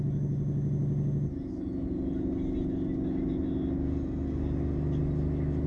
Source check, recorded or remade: recorded